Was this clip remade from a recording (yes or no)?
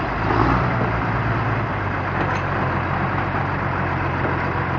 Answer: no